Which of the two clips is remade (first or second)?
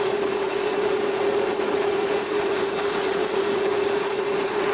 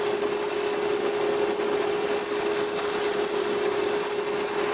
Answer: first